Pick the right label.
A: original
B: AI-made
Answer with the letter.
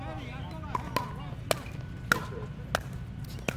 A